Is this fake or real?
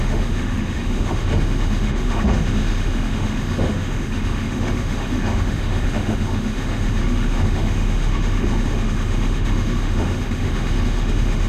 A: fake